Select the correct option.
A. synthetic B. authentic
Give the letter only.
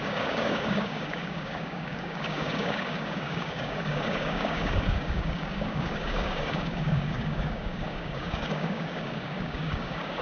A